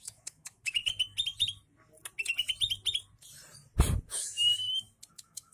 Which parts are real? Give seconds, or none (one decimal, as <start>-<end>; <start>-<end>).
0.8-4.1; 4.5-5.1